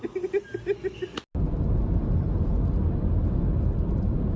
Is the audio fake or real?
real